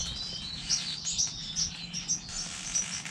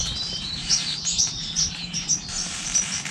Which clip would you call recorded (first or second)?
first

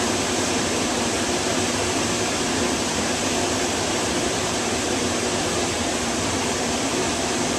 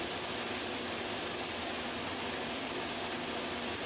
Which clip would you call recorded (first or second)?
second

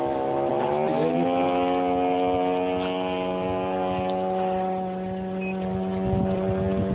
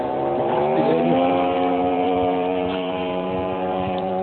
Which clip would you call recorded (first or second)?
first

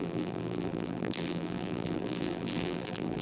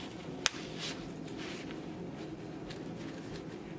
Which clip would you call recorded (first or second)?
second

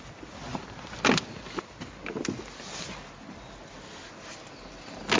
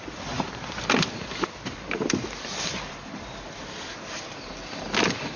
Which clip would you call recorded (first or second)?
first